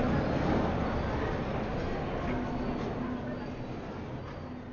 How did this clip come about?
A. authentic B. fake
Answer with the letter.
A